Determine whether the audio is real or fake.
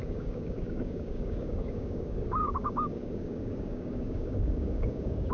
fake